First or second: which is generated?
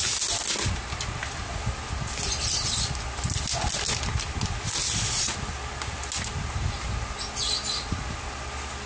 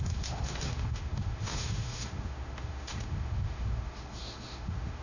second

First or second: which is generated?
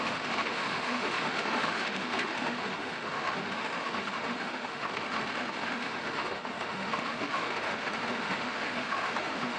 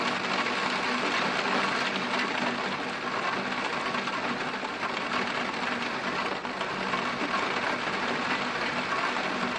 first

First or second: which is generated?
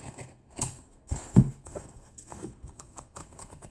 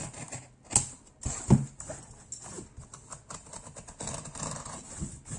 first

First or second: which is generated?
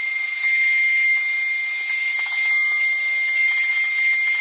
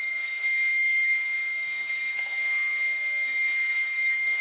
second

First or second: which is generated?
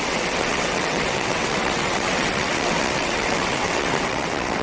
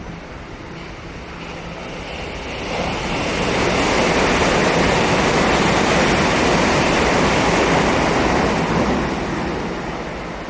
first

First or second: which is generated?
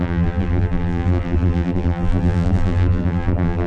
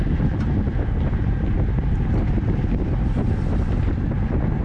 first